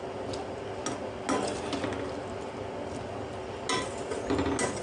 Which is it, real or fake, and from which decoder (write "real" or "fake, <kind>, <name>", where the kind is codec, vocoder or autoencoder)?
real